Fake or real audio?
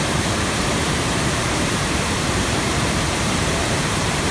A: fake